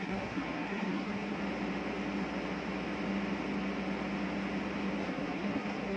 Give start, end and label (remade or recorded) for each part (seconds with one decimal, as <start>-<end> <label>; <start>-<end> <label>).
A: 0.0-1.4 remade; 1.4-5.0 recorded; 5.0-6.0 remade